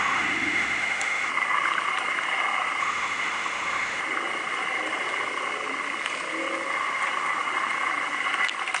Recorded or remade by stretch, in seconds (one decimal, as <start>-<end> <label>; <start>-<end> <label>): 0.0-1.3 remade; 1.3-2.8 recorded; 2.8-4.0 remade; 4.0-8.8 recorded